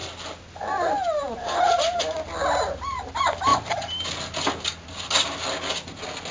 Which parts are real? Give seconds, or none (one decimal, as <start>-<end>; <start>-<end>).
0.0-6.3